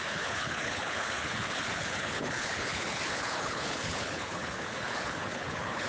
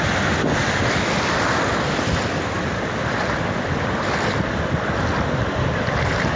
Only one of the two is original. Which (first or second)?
second